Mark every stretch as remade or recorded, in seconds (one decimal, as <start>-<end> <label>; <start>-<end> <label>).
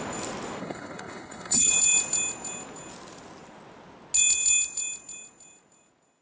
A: 0.0-0.6 recorded; 0.6-1.7 remade; 1.7-6.2 recorded